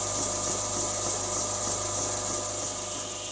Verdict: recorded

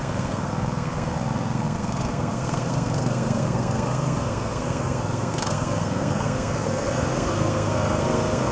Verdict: remade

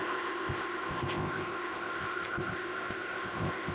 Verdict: remade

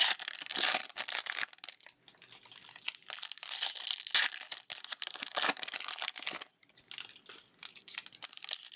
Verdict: recorded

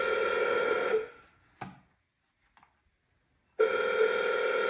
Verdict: recorded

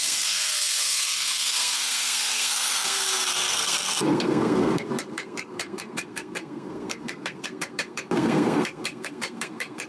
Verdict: remade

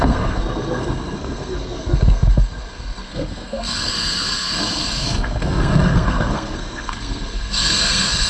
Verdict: remade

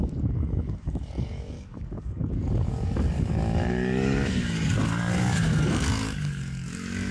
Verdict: remade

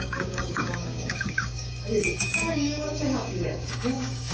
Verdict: remade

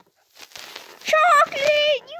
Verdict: recorded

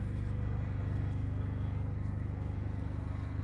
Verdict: remade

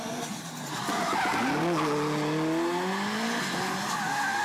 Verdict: recorded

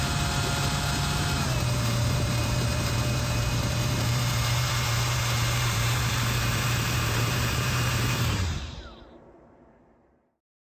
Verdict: remade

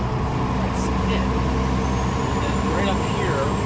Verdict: recorded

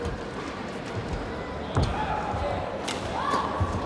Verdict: recorded